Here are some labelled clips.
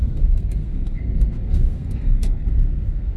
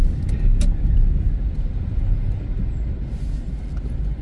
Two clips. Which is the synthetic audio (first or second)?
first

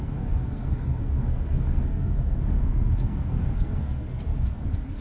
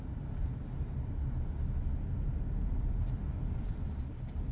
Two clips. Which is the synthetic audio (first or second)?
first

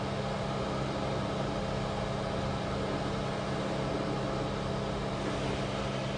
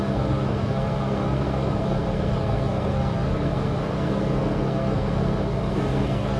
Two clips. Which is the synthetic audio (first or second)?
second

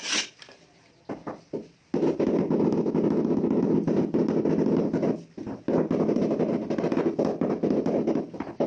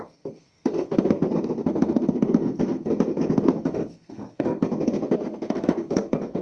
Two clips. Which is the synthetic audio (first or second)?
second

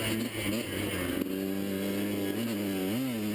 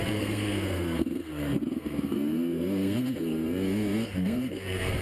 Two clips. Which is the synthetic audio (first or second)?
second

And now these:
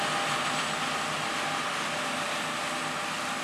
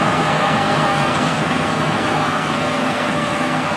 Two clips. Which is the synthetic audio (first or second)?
second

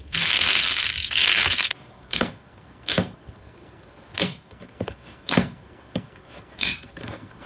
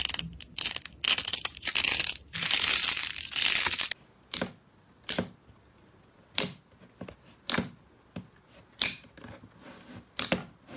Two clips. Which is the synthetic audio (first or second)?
first